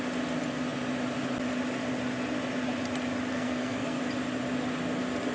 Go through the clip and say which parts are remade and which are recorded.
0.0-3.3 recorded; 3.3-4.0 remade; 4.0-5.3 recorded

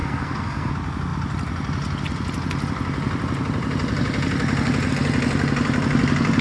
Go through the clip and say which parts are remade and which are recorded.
0.0-0.7 remade; 0.7-6.4 recorded